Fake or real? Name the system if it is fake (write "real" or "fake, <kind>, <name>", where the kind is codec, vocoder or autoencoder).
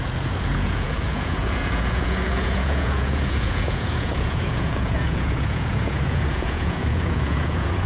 fake, vocoder, Vocos